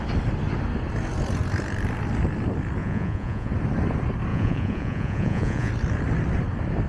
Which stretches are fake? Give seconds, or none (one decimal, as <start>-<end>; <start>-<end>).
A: 2.8-3.5; 4.3-5.7